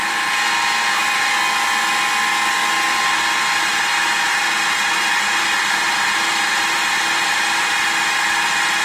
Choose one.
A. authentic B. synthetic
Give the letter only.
A